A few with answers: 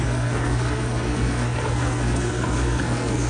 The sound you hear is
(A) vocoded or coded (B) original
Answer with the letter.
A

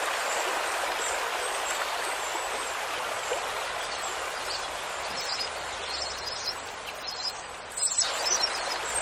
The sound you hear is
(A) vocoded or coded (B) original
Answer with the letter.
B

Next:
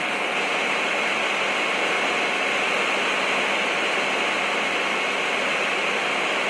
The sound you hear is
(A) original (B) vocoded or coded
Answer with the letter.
A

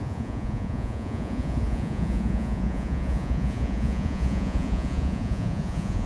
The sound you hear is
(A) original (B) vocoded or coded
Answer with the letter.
B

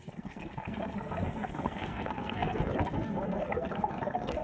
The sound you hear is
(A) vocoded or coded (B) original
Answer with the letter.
A